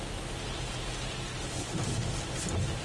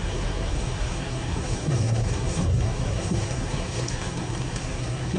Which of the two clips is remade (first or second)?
second